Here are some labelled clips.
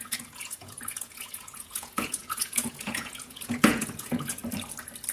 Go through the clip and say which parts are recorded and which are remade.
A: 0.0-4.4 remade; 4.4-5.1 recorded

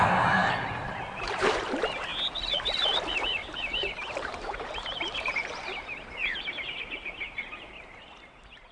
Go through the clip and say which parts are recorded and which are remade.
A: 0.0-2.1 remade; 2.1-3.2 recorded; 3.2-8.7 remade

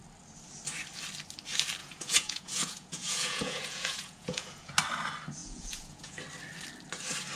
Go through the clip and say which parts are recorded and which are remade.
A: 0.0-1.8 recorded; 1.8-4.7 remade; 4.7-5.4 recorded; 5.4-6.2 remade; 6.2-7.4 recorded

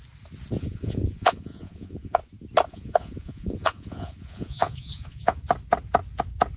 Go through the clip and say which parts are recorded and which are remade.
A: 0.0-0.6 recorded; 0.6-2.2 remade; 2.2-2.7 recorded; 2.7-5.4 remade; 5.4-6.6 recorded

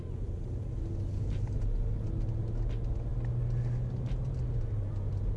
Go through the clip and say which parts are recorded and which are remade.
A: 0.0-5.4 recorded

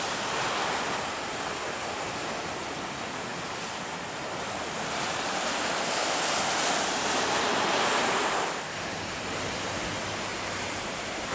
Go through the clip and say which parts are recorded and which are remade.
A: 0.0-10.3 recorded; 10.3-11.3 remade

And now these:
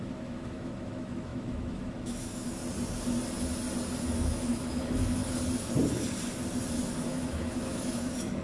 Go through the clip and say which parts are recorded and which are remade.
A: 0.0-2.6 remade; 2.6-4.0 recorded; 4.0-5.2 remade; 5.2-7.0 recorded; 7.0-8.4 remade